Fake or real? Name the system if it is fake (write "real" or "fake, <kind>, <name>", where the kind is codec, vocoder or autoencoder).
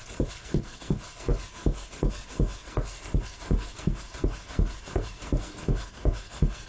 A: fake, codec, SNAC